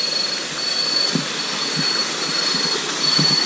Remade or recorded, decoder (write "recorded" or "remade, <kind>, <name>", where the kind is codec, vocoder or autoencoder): recorded